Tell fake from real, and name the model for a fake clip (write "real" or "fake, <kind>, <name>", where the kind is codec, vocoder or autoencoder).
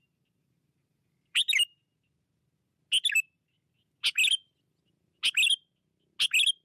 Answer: real